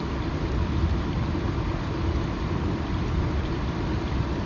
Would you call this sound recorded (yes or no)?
yes